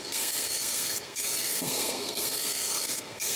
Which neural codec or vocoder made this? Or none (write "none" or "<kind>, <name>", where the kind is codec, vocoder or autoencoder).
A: codec, SNAC